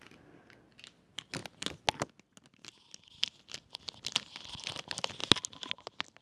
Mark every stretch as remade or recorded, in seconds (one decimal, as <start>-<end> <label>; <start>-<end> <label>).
0.0-6.2 recorded